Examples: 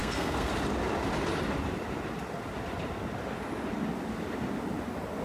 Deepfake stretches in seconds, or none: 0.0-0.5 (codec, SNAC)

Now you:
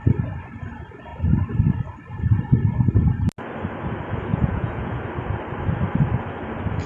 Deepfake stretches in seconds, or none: 4.3-5.0 (vocoder, Vocos)

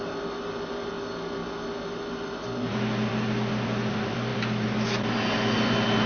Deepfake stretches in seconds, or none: none

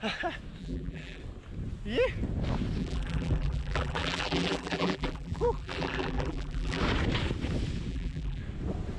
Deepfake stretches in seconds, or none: 0.6-1.2 (vocoder, BigVGAN v2); 2.8-6.8; 7.9-8.4

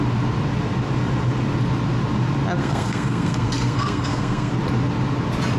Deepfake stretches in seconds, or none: 2.6-4.5 (codec, SNAC)